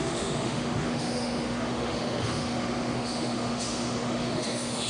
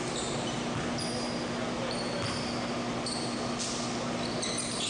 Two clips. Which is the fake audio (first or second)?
first